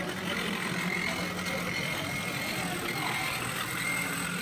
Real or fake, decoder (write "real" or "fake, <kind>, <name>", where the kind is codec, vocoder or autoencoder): real